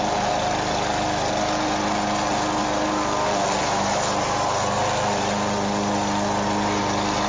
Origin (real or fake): real